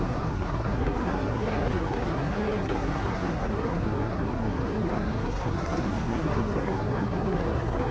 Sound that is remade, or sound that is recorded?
remade